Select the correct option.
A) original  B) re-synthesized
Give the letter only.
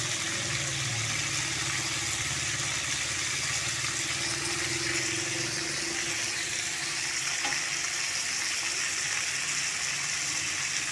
A